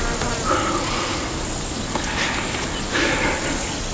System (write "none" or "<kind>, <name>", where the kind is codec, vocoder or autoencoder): none